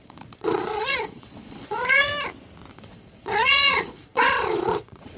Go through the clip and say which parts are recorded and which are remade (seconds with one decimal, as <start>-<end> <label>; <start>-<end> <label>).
0.0-2.1 remade; 2.1-2.7 recorded; 2.7-5.2 remade